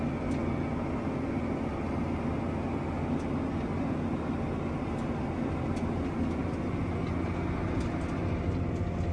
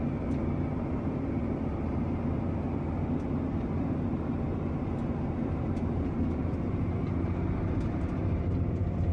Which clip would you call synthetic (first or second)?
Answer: second